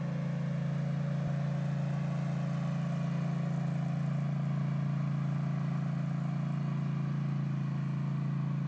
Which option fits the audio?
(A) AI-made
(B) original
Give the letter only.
B